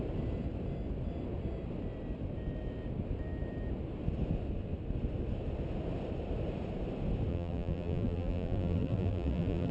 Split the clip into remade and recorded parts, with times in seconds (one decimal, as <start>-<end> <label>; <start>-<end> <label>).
0.0-7.3 recorded; 7.3-9.7 remade